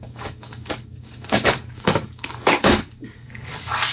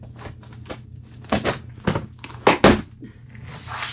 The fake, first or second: first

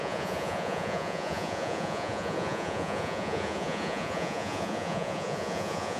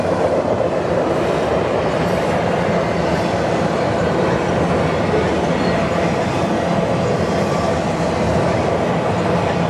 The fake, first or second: first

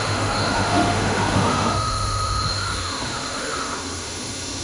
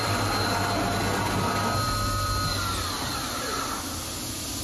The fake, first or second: first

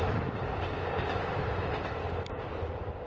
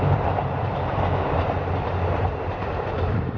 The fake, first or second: second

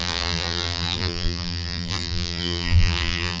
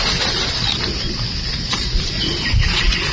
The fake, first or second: first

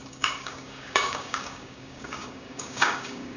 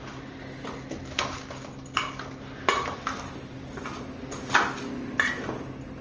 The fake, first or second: first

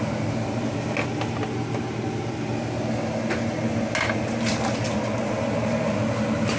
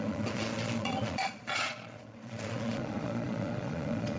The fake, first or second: second